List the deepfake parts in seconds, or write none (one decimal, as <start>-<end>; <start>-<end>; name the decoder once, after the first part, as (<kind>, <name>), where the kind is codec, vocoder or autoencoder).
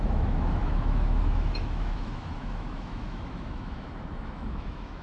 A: 0.0-5.0 (autoencoder, DAC-VAE)